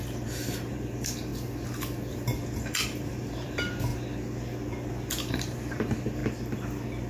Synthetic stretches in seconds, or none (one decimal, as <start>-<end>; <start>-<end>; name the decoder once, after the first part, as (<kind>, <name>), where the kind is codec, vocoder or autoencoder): 0.0-1.3 (vocoder, BigVGAN v2); 2.1-3.9; 5.1-6.2